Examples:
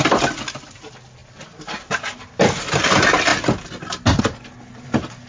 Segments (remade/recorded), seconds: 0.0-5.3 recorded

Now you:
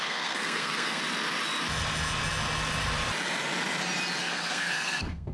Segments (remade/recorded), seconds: 0.0-1.0 remade; 1.0-4.2 recorded; 4.2-5.3 remade